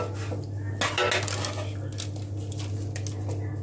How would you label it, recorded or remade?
recorded